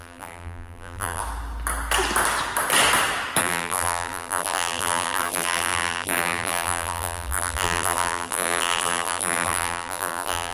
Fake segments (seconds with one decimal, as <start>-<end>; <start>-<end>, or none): 0.0-1.2; 3.4-10.5